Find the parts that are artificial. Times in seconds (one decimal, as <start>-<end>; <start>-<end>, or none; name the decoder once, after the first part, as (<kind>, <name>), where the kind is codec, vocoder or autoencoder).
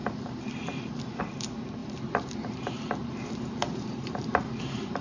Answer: 0.0-1.2 (vocoder, BigVGAN v2); 1.8-5.0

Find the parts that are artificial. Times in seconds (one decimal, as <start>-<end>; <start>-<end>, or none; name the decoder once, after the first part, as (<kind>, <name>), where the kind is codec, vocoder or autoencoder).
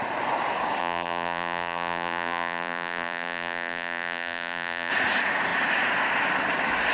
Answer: 0.8-4.9 (vocoder, BigVGAN v2)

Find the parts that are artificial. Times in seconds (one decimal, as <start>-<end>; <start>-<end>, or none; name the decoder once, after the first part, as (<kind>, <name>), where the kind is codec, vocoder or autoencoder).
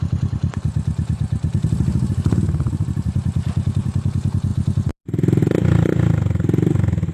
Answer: 4.5-5.4 (vocoder, BigVGAN v2)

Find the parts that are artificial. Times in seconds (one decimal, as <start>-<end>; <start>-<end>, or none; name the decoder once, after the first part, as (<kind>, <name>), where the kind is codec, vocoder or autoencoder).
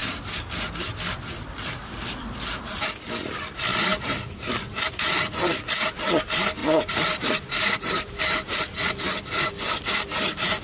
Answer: 3.9-5.6 (vocoder, BigVGAN v2); 6.6-8.9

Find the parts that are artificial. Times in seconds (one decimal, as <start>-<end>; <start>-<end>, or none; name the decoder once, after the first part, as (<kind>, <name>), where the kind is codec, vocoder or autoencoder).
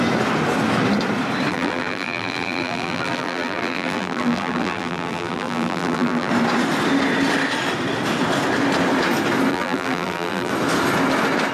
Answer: 1.5-6.3 (vocoder, BigVGAN v2); 9.5-10.5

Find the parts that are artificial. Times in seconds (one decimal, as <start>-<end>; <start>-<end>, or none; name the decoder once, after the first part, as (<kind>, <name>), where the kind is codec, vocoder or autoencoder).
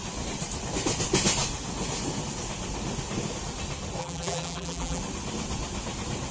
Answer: 4.0-5.0 (vocoder, BigVGAN v2)